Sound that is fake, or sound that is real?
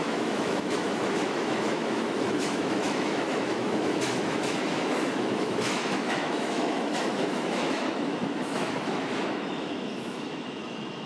fake